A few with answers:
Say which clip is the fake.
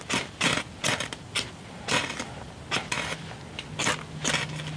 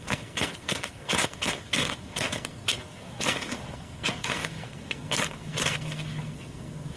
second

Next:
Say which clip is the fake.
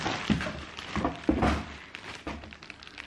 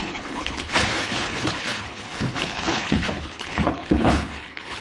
second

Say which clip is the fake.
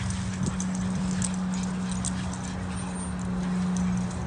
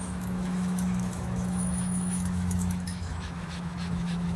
second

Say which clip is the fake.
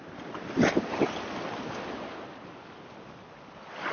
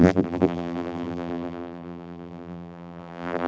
second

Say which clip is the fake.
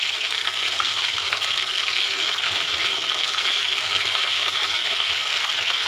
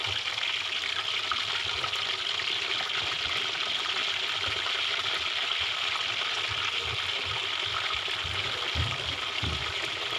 first